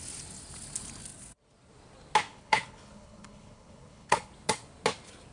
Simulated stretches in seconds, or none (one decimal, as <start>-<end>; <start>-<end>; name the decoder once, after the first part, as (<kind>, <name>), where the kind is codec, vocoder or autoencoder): 2.3-4.3 (codec, HILCodec)